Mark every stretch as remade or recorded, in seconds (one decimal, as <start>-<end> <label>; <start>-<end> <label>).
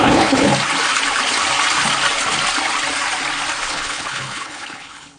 0.0-0.5 remade; 0.5-3.6 recorded; 3.6-5.2 remade